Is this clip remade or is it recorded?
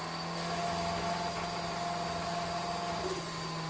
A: recorded